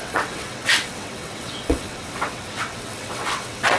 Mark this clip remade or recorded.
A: remade